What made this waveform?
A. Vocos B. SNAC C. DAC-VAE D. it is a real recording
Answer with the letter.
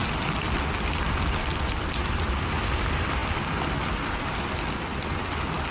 D